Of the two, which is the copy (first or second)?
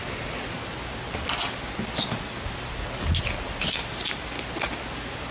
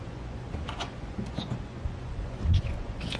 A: second